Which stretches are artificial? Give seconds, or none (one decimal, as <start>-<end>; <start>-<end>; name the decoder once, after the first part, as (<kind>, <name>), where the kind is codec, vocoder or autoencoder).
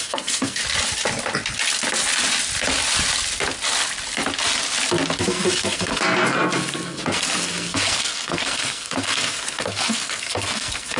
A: 0.0-0.6 (codec, SNAC); 5.2-11.0